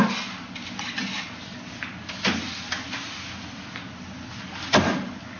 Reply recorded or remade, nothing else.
recorded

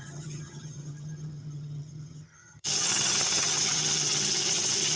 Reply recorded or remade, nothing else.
remade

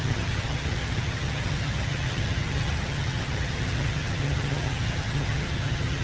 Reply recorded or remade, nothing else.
remade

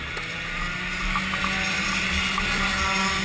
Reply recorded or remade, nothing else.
recorded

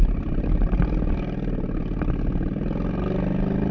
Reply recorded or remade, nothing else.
recorded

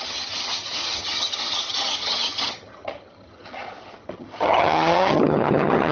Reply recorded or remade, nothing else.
remade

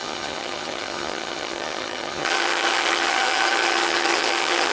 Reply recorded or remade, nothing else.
remade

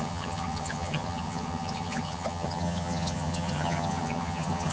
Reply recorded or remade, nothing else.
remade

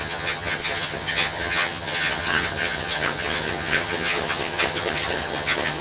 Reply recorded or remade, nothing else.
remade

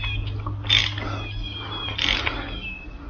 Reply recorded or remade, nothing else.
recorded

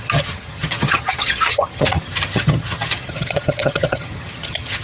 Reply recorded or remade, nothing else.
remade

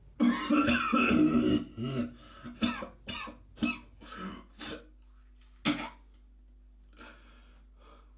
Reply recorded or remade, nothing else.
recorded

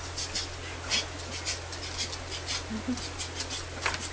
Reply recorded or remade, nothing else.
recorded